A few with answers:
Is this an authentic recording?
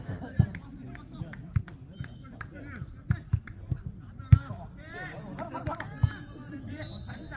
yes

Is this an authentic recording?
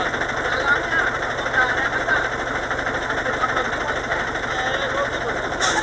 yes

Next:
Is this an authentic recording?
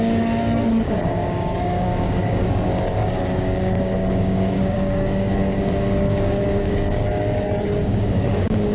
no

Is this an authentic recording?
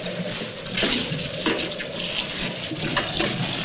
yes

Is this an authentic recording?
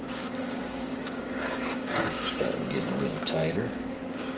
no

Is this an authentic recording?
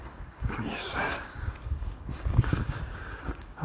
no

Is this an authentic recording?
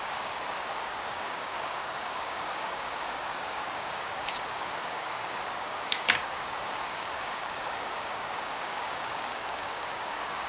no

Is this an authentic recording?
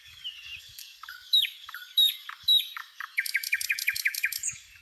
no